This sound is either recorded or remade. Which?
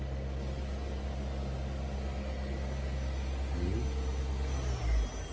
recorded